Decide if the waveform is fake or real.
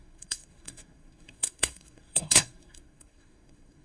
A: fake